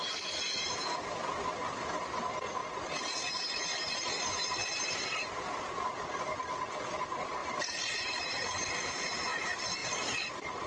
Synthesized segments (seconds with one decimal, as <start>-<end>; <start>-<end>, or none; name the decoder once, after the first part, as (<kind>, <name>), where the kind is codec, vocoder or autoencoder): 7.4-8.3 (vocoder, BigVGAN v2); 9.8-10.7